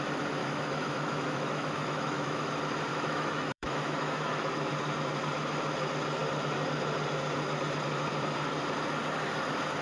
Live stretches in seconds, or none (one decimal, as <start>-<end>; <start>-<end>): 0.0-0.4; 2.5-2.9; 4.5-9.8